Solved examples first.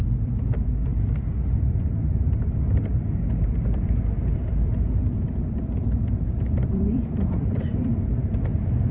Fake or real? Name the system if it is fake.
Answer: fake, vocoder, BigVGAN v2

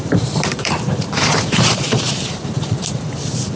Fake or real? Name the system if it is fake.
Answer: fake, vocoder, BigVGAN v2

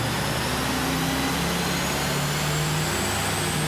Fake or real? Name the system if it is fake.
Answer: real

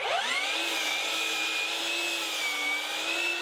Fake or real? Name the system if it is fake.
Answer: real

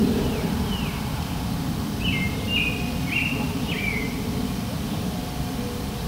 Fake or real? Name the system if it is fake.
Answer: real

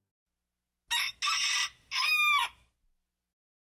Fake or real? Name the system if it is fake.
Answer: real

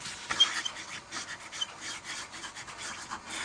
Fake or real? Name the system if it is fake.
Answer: real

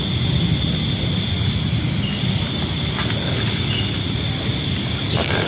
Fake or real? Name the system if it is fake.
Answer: real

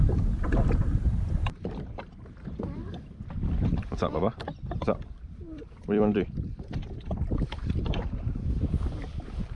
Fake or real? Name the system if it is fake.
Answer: fake, vocoder, BigVGAN v2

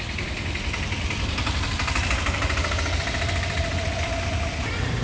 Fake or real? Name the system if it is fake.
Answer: fake, vocoder, BigVGAN v2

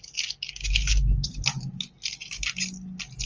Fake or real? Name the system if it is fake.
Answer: real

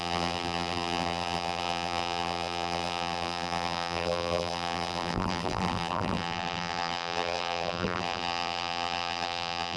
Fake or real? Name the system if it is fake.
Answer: fake, vocoder, BigVGAN v2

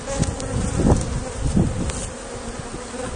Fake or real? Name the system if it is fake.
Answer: real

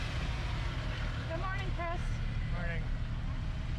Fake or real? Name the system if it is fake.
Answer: real